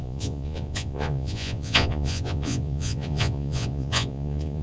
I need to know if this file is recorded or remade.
remade